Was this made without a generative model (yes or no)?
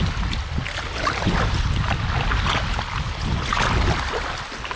yes